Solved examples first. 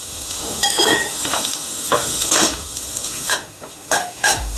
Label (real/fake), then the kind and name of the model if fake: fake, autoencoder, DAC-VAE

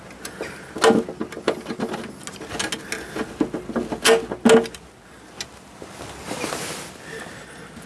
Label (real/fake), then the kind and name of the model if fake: real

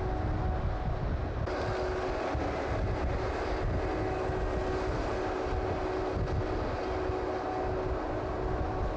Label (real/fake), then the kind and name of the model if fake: real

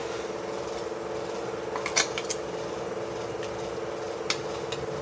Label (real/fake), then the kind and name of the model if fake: real